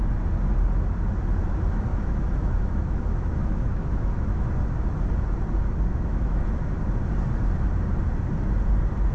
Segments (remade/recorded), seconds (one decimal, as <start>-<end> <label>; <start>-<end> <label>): 0.0-1.9 recorded; 1.9-4.5 remade; 4.5-5.9 recorded; 5.9-6.8 remade; 6.8-9.1 recorded